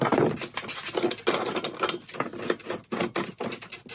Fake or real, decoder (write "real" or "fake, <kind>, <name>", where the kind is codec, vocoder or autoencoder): real